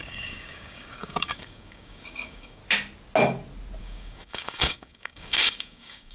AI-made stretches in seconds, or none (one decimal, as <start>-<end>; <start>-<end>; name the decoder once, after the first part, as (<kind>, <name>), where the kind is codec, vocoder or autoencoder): 0.0-2.6 (codec, DAC); 3.8-6.1